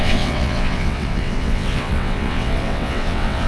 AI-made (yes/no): yes